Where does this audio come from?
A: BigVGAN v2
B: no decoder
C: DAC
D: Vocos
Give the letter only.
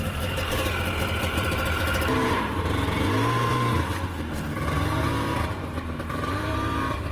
A